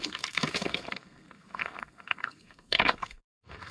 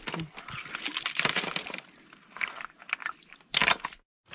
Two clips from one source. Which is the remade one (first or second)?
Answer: first